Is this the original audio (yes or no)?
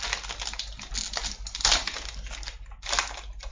yes